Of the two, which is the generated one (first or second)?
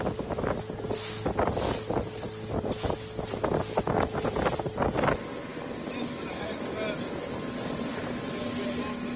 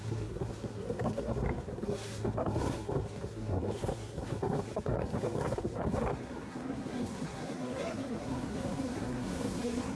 second